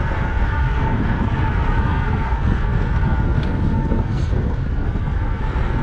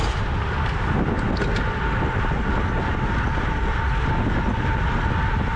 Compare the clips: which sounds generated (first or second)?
first